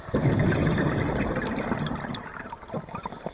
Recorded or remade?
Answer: recorded